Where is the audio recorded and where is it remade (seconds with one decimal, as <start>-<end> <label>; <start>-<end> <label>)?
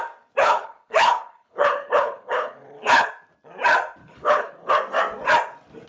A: 0.0-0.4 recorded; 0.4-3.1 remade; 3.1-4.0 recorded; 4.0-4.7 remade; 4.7-5.9 recorded